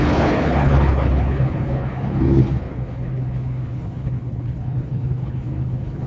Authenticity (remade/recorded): remade